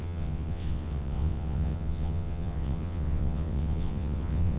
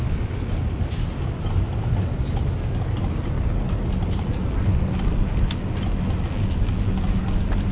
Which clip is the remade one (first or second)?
first